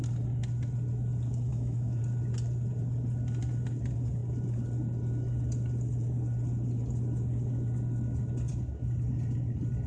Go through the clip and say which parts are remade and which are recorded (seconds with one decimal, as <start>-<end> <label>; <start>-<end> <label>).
0.0-1.5 recorded; 1.5-2.0 remade; 2.0-9.9 recorded